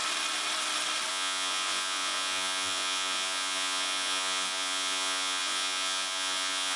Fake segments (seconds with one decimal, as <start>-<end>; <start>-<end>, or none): 1.1-6.8